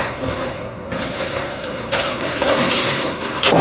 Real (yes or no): no